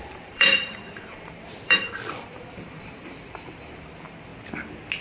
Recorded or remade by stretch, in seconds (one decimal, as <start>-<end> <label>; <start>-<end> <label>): 0.0-4.3 remade; 4.3-5.0 recorded